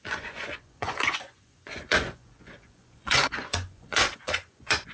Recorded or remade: remade